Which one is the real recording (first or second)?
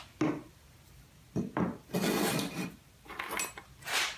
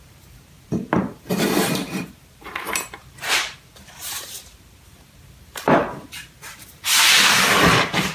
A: first